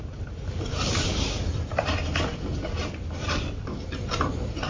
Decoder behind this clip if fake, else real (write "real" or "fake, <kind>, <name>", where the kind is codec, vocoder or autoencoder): real